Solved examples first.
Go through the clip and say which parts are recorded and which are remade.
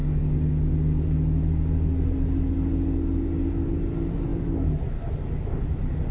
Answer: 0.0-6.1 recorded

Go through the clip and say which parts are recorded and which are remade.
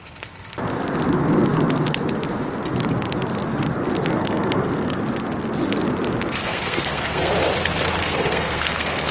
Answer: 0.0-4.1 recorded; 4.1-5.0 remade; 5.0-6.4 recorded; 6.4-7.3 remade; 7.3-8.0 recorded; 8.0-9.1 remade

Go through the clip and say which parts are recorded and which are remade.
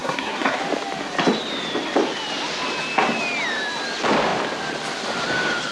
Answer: 0.0-0.6 remade; 0.6-5.7 recorded